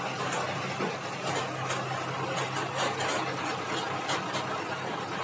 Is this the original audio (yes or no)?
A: yes